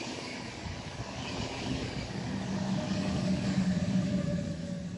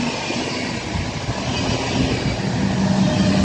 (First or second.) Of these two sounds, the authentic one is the second